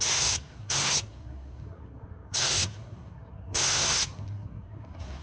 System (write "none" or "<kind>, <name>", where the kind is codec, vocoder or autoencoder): codec, SNAC